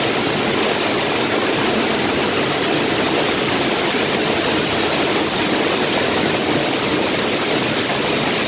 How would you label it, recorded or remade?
recorded